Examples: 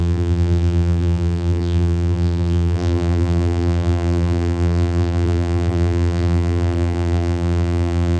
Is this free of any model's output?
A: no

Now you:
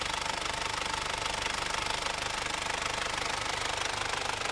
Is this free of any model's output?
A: yes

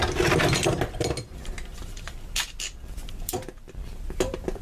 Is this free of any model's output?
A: no